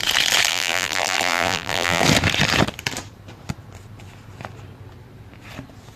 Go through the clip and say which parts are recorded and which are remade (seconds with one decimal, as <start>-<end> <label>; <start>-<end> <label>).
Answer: 0.0-0.5 recorded; 0.5-2.0 remade; 2.0-6.0 recorded